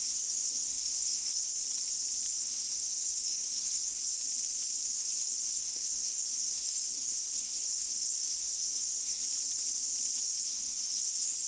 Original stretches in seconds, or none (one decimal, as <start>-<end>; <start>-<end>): 1.6-2.3; 4.2-4.9; 9.2-10.2